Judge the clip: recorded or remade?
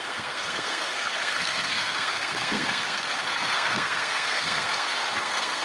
remade